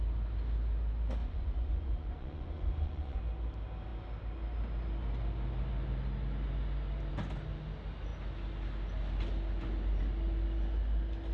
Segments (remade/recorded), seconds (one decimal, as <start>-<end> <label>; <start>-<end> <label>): 0.0-1.2 recorded; 1.2-3.2 remade; 3.2-11.3 recorded